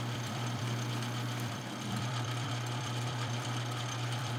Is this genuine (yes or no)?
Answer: no